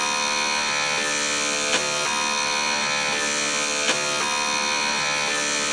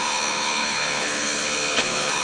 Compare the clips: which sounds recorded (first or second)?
first